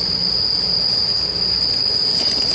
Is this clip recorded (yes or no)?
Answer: yes